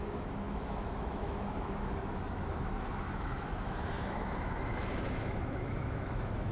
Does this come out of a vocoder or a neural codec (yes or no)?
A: yes